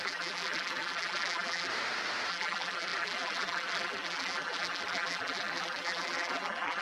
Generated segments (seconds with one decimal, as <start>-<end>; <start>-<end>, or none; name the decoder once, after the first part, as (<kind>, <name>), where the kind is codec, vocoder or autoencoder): 0.0-1.7 (vocoder, BigVGAN v2); 2.3-6.8